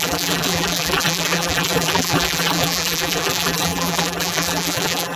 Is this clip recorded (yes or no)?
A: no